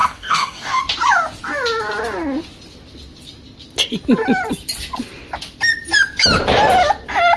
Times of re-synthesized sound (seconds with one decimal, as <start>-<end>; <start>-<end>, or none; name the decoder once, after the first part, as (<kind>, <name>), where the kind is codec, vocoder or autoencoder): 0.0-0.8 (codec, DAC)